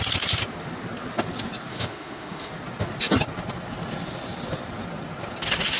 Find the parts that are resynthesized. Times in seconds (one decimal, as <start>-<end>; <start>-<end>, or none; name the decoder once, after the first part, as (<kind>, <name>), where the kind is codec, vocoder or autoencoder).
1.7-2.5 (autoencoder, DAC-VAE)

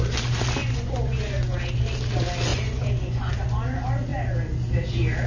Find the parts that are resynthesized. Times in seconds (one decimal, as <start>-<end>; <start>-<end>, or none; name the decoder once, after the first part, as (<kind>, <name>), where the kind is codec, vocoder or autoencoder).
0.6-1.7 (vocoder, Vocos); 2.5-3.3

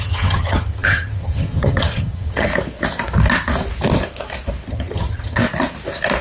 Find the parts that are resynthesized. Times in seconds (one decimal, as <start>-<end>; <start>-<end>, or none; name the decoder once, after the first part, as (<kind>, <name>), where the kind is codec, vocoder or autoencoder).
0.0-2.5 (vocoder, HiFi-GAN); 4.7-5.4

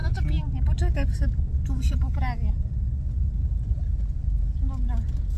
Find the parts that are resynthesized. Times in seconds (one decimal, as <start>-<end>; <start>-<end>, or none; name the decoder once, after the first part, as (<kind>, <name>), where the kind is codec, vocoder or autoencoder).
none

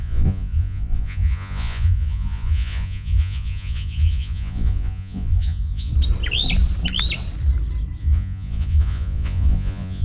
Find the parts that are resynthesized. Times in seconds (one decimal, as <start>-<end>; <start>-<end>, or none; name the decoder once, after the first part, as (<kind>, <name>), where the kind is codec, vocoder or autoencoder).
0.0-5.9 (vocoder, Vocos); 8.0-10.0

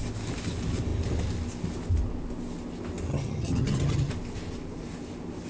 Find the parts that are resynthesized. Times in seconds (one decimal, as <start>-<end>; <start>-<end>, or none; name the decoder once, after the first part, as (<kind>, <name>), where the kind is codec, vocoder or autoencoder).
3.1-4.1 (vocoder, HiFi-GAN)

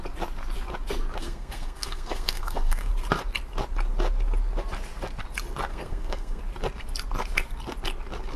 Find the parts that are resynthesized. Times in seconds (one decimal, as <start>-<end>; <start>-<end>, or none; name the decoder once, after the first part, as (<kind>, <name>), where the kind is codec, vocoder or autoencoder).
1.2-2.9 (codec, SNAC); 5.7-6.4